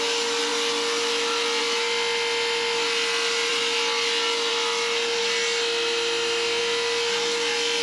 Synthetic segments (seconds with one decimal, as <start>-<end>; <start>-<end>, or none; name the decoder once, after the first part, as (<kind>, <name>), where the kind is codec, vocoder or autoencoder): none